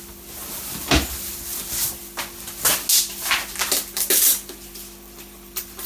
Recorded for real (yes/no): yes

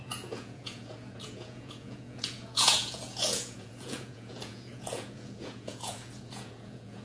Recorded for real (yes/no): no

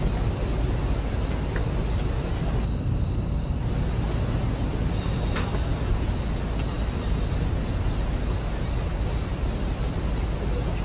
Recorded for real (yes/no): yes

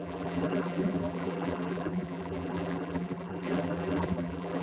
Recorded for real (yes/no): no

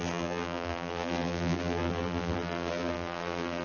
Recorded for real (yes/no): no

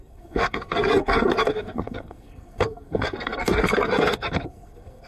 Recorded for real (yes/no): no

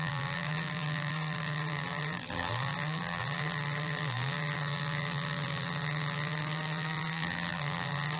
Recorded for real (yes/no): no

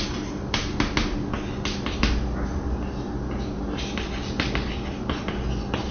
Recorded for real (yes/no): yes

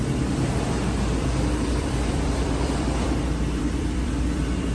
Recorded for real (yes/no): no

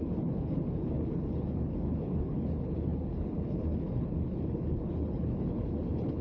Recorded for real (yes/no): no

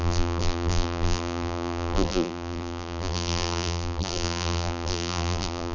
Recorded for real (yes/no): no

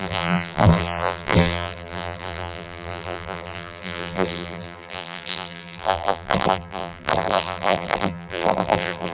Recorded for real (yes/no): no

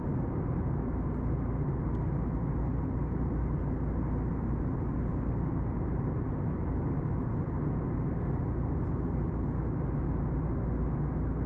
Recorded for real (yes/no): yes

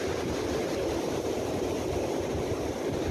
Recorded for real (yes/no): no